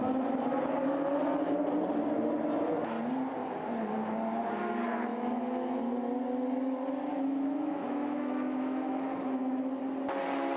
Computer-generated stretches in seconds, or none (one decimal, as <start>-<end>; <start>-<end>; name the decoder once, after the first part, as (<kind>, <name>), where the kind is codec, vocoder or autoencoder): 5.1-5.8 (autoencoder, DAC-VAE); 7.1-9.8